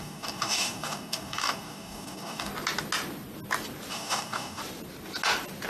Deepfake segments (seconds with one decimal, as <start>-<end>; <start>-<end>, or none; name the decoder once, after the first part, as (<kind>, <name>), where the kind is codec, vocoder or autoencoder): 0.0-2.5 (codec, DAC); 3.9-4.6